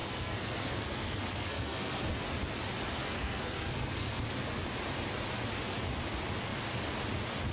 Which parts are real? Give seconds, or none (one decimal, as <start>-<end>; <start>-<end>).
2.0-3.0; 4.2-7.5

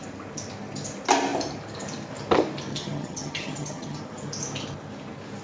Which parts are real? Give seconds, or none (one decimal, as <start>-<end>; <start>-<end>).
0.0-2.7; 4.0-5.4

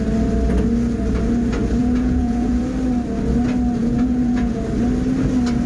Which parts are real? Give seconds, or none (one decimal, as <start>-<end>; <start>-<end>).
0.0-1.8; 2.6-3.8; 4.6-5.7

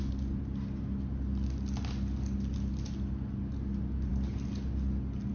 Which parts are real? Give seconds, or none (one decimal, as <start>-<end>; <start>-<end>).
0.0-5.3

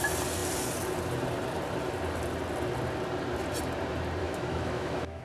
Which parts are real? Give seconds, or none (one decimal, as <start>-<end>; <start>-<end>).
0.0-4.2